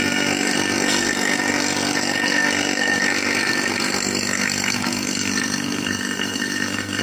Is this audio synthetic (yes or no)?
yes